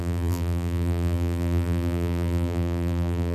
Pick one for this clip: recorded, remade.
remade